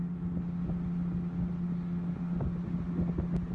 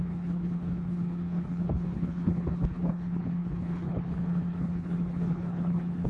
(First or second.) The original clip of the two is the first